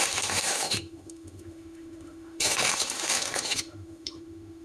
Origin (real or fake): fake